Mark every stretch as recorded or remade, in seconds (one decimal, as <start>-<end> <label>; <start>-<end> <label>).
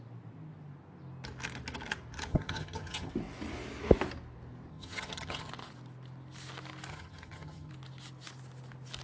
0.0-2.3 recorded; 2.3-3.1 remade; 3.1-4.7 recorded; 4.7-5.5 remade; 5.5-6.9 recorded; 6.9-7.7 remade; 7.7-9.0 recorded